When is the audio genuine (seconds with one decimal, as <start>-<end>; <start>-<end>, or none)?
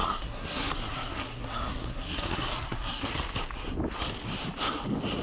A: 3.1-5.2